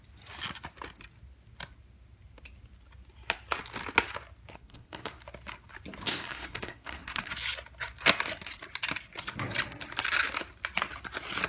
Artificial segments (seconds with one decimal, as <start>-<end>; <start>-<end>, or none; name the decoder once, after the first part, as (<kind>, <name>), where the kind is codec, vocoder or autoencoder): 4.5-5.2 (codec, SNAC); 6.0-7.3